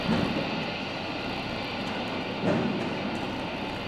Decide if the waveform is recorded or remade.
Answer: recorded